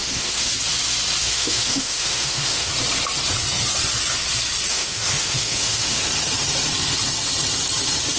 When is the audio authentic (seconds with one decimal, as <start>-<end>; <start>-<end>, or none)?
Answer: 0.5-1.2; 2.7-4.7; 6.0-8.2